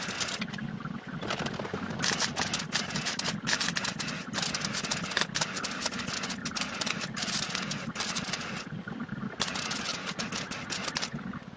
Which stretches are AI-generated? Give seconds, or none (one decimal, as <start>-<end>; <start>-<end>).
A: none